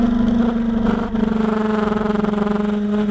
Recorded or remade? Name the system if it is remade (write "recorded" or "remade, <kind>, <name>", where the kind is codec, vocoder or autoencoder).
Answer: recorded